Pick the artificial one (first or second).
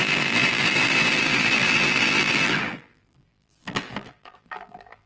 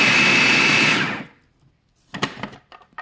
first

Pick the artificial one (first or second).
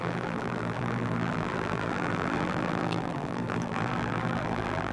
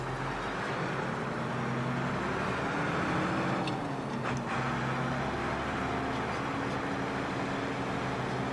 first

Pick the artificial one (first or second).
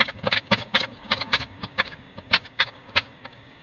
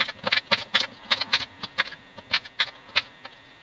first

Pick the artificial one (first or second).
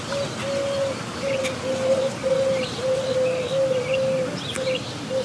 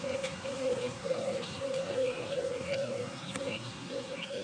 second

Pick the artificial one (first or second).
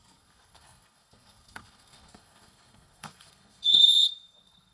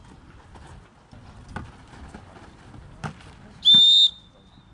first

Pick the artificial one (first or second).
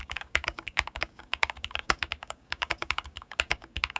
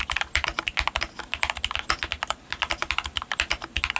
first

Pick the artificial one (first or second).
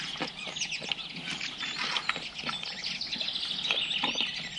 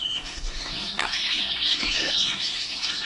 second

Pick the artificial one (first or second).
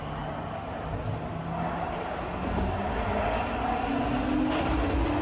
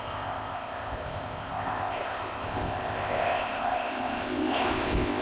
second